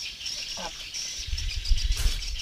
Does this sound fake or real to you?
fake